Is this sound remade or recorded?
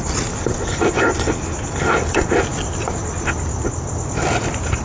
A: recorded